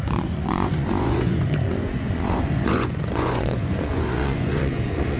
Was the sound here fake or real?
fake